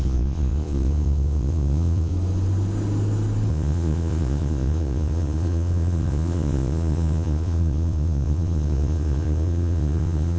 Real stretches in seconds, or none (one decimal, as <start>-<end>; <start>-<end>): 2.1-3.5